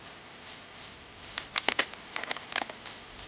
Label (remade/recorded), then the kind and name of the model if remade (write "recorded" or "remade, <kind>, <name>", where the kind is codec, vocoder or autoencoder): recorded